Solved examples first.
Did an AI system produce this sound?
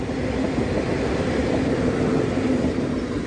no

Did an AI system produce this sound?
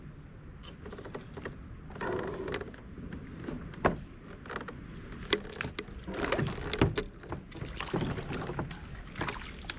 no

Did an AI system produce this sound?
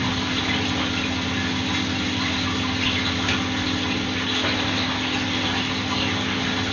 no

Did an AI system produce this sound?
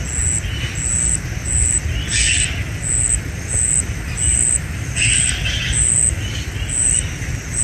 no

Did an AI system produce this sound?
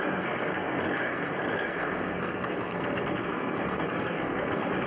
yes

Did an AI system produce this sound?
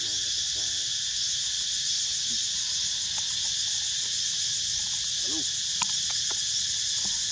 no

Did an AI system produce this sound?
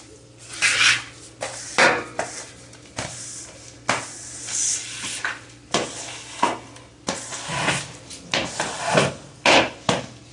no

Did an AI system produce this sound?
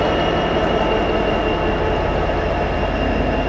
no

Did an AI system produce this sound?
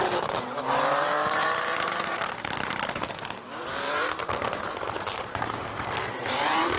yes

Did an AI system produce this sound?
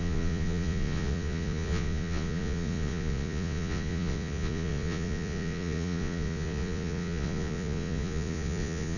yes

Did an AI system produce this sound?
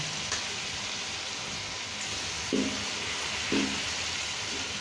no